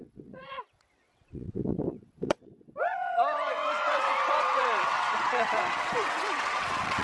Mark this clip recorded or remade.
remade